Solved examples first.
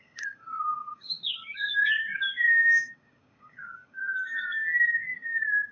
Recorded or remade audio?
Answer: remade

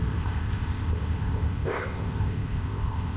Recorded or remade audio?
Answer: remade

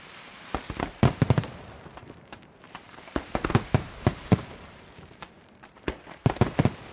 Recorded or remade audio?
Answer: remade